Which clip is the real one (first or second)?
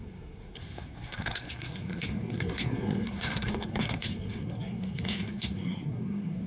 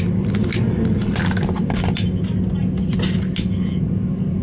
second